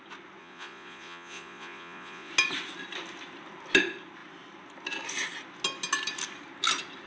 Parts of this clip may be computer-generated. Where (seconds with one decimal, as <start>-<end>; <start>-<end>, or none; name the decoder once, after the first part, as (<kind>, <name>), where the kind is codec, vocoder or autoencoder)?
0.4-2.3 (vocoder, Vocos)